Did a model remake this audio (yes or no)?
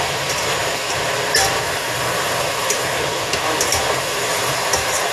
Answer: yes